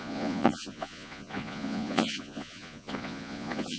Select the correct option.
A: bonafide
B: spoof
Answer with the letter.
B